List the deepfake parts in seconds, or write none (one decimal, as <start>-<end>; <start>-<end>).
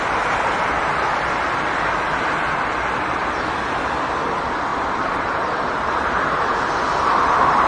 4.7-5.8